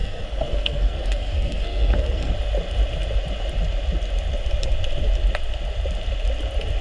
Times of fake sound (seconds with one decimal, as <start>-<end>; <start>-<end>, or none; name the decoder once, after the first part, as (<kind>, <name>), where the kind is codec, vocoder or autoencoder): 0.0-2.3 (codec, SNAC)